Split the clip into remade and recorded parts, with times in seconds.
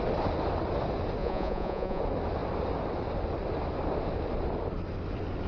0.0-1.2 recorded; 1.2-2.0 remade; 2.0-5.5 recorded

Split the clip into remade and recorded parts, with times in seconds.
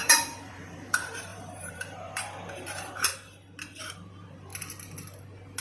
0.0-3.1 remade; 3.1-3.8 recorded; 3.8-4.5 remade; 4.5-5.6 recorded